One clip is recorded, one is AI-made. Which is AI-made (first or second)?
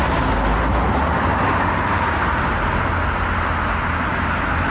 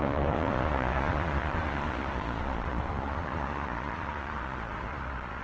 second